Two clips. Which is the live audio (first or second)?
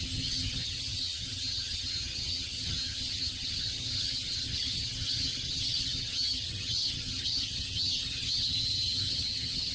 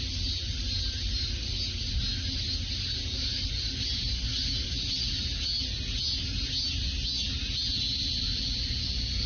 second